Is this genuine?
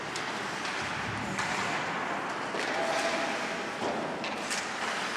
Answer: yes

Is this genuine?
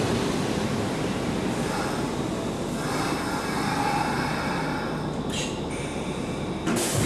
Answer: yes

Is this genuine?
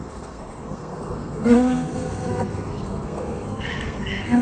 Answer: no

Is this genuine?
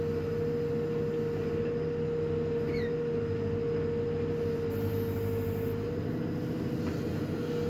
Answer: yes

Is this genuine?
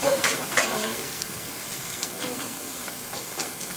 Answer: no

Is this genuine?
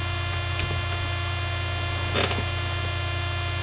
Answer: yes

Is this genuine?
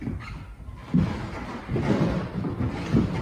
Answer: yes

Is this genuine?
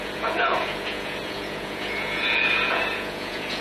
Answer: no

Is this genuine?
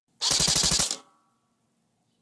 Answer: yes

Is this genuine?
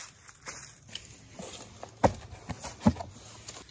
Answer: yes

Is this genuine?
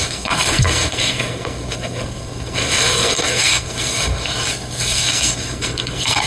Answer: no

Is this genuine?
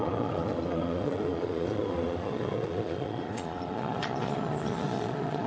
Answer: no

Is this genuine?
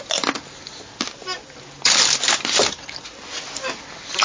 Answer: yes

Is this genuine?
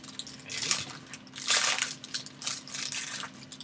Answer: yes